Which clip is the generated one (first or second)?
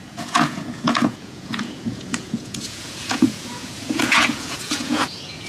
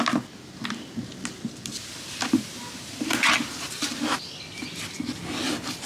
first